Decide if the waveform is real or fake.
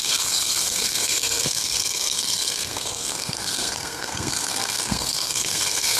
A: fake